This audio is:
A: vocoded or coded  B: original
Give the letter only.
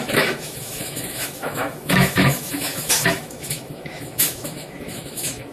A